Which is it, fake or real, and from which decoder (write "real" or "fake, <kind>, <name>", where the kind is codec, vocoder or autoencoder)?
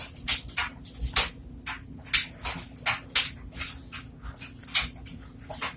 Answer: real